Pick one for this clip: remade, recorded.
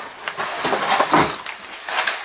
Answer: recorded